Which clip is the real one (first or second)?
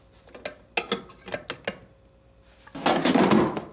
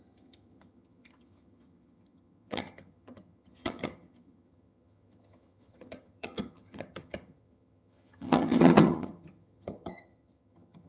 first